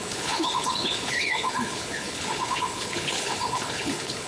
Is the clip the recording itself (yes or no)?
no